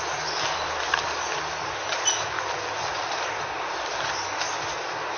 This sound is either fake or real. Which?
real